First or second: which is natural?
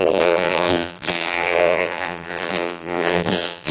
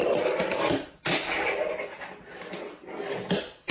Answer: second